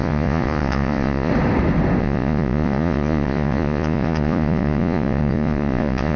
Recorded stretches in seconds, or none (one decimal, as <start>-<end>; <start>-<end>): 1.3-2.0